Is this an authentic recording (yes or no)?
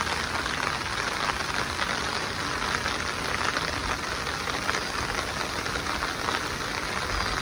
yes